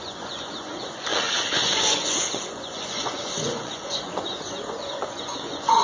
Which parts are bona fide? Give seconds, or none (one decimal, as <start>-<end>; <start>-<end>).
none